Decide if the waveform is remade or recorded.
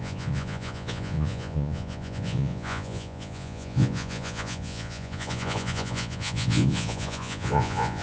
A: remade